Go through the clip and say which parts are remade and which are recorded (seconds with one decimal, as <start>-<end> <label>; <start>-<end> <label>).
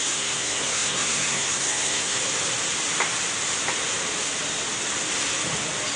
0.0-2.2 remade; 2.2-6.0 recorded